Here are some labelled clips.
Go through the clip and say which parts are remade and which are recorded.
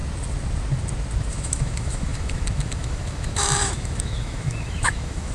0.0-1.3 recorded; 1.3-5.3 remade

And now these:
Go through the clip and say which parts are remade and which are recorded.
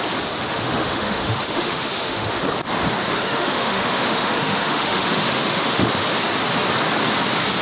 0.0-0.5 recorded; 0.5-2.4 remade; 2.4-3.2 recorded; 3.2-6.1 remade; 6.1-7.6 recorded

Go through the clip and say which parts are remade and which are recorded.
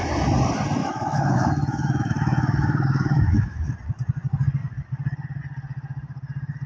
0.0-0.8 recorded; 0.8-3.7 remade; 3.7-6.7 recorded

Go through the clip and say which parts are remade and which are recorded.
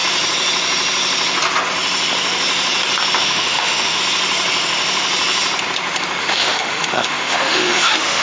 0.0-3.2 recorded; 3.2-4.0 remade; 4.0-6.2 recorded; 6.2-8.2 remade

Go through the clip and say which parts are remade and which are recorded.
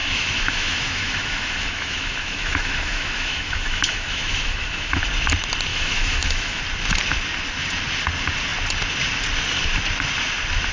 0.0-5.0 remade; 5.0-5.7 recorded; 5.7-6.6 remade; 6.6-10.7 recorded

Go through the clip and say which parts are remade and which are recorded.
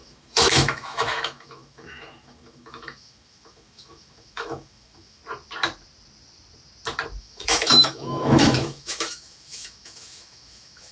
0.0-5.2 remade; 5.2-7.2 recorded; 7.2-10.9 remade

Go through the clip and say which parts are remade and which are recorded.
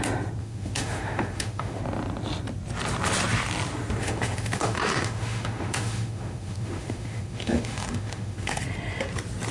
0.0-0.4 recorded; 0.4-1.8 remade; 1.8-4.0 recorded; 4.0-8.6 remade; 8.6-9.5 recorded